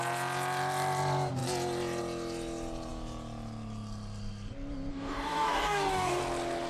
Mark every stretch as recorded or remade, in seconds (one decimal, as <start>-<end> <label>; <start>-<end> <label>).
0.0-4.9 recorded; 4.9-6.2 remade; 6.2-6.7 recorded